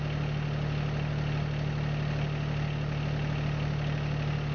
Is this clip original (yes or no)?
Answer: yes